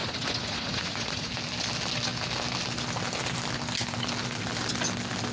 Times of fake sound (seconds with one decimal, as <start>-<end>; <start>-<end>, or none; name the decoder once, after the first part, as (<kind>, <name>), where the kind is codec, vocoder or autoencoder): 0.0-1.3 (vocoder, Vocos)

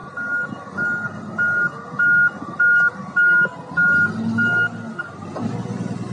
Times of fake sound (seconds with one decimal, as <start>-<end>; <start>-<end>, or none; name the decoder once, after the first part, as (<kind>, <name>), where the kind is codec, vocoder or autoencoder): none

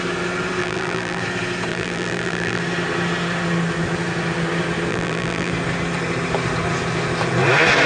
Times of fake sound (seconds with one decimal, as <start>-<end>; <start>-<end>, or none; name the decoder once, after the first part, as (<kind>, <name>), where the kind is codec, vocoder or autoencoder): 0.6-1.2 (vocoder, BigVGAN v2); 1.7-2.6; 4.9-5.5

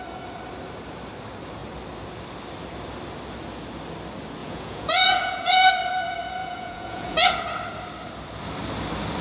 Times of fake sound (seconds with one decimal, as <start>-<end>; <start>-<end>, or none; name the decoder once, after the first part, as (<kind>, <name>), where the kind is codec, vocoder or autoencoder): 4.4-5.7 (vocoder, Vocos); 6.4-7.4

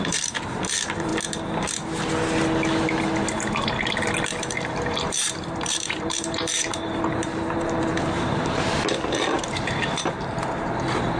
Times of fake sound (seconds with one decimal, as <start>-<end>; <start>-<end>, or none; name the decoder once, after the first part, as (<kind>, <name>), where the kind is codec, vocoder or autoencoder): 0.0-1.1 (vocoder, BigVGAN v2); 4.5-11.2

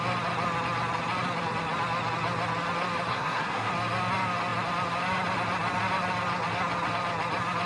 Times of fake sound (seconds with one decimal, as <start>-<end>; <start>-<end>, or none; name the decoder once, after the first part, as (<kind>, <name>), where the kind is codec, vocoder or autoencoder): 3.1-3.7 (codec, SNAC)

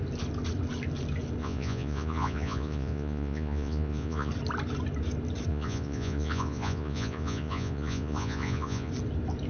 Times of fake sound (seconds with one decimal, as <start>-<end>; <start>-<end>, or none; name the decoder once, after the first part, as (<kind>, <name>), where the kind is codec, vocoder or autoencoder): 1.4-4.3 (vocoder, Vocos); 5.5-8.9